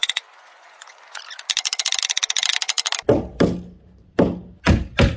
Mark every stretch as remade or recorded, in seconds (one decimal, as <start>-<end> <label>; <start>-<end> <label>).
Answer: 0.0-1.2 remade; 1.2-5.2 recorded

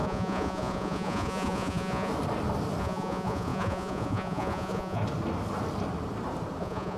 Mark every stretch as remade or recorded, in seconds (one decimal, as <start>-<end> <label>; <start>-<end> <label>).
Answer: 0.0-2.1 remade; 2.1-2.8 recorded; 2.8-5.0 remade; 5.0-6.6 recorded; 6.6-7.0 remade

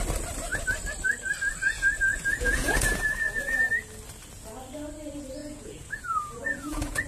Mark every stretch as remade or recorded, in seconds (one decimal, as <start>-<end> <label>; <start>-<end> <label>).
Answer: 0.0-2.1 recorded; 2.1-3.6 remade; 3.6-5.4 recorded; 5.4-7.1 remade